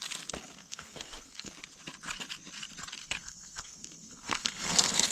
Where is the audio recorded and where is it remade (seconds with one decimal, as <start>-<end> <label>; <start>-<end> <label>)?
0.0-0.6 recorded; 0.6-1.5 remade; 1.5-3.0 recorded; 3.0-5.1 remade